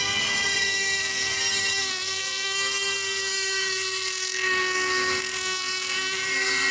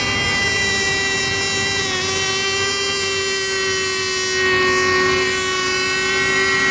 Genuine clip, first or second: second